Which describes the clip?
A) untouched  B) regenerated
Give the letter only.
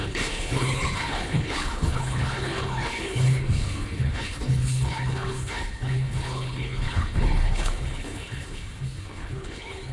B